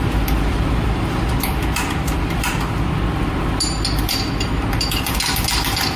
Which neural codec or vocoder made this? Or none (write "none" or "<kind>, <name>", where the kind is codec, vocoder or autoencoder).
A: none